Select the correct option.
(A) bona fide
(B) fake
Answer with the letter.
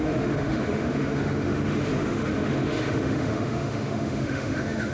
B